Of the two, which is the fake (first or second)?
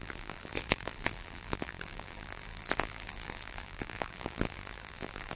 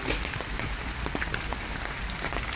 first